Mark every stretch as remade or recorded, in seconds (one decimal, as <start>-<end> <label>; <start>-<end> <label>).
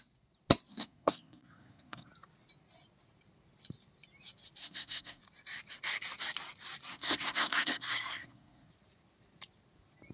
0.0-0.7 recorded; 0.7-2.1 remade; 2.1-4.6 recorded; 4.6-5.2 remade; 5.2-6.9 recorded; 6.9-8.7 remade; 8.7-10.1 recorded